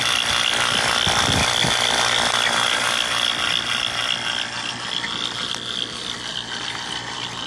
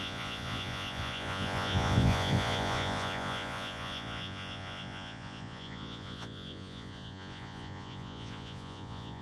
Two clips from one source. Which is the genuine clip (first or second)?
first